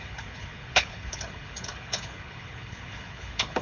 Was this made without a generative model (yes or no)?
no